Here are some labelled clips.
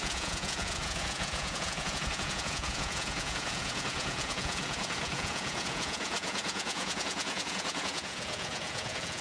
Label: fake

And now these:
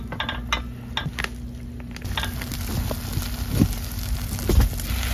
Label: real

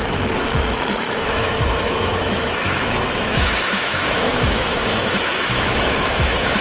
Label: fake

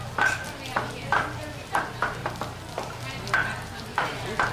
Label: real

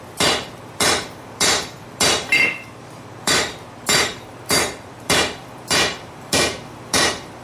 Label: fake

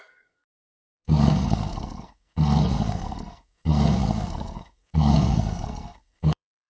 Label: fake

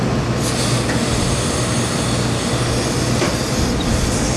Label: real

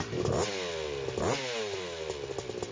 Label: real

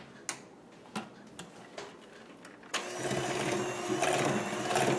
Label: real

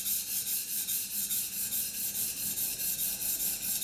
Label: real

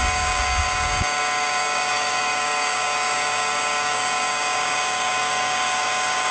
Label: fake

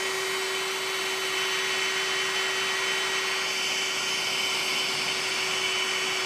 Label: real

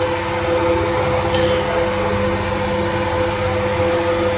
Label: real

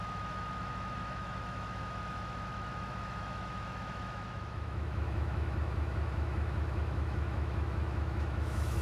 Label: fake